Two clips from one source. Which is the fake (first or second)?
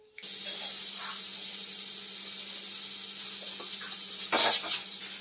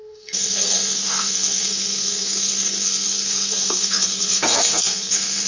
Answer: second